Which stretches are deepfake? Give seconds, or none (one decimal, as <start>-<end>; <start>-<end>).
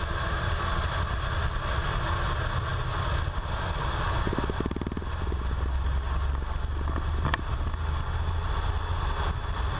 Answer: none